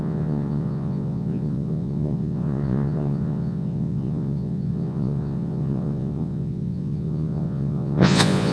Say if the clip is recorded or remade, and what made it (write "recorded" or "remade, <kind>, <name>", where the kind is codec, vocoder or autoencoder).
remade, vocoder, Vocos